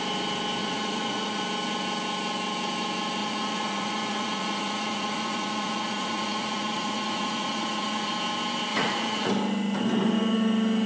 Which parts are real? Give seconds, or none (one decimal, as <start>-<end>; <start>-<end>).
0.0-0.6; 1.4-3.2; 8.1-8.7; 9.3-10.9